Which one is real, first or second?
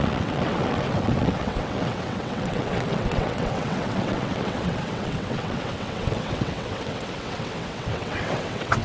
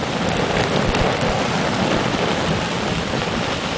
second